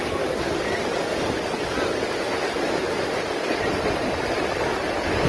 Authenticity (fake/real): real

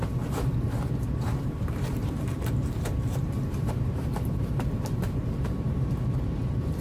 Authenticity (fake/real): fake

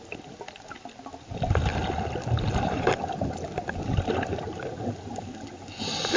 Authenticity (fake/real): real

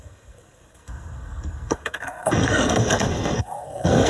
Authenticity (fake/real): fake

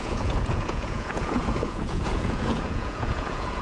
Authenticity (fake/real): fake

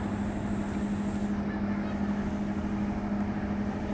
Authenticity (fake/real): real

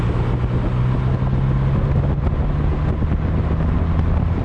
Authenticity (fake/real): real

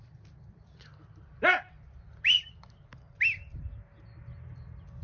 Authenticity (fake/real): real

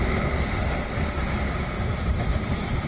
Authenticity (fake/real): real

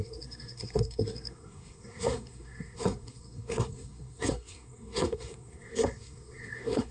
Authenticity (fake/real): fake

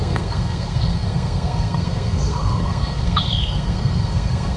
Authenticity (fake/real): fake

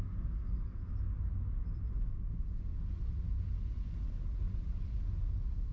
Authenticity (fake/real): real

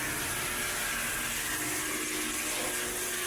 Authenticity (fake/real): real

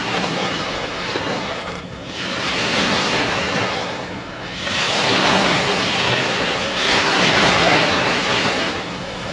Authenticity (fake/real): fake